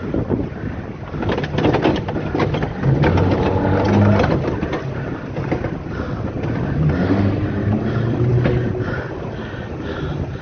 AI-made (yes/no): no